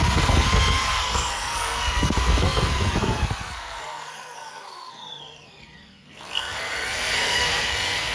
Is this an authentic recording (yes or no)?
no